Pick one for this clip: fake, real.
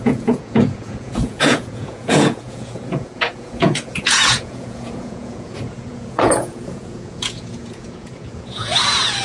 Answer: fake